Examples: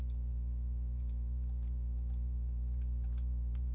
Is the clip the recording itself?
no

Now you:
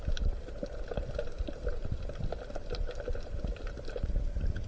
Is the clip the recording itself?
yes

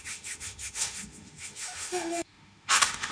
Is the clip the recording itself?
no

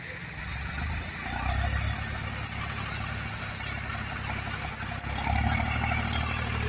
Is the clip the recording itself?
yes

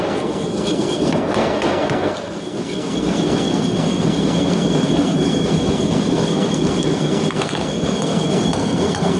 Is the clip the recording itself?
no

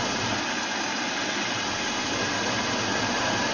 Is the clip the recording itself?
yes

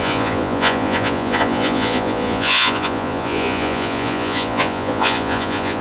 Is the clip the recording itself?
no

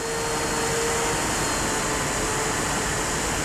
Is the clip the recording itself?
yes